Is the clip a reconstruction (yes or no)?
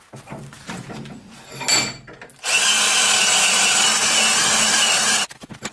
no